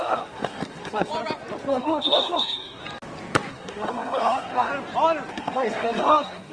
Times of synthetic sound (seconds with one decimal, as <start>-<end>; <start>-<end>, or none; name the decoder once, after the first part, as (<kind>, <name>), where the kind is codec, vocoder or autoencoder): 0.0-1.1 (codec, SNAC); 1.7-2.8; 3.5-4.7; 5.3-6.5